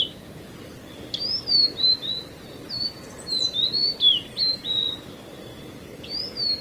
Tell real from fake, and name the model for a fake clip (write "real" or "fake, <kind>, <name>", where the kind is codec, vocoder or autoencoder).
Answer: real